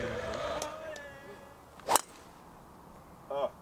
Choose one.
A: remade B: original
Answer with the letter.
B